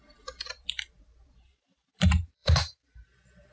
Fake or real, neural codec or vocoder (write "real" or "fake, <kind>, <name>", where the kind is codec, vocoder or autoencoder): fake, vocoder, BigVGAN v2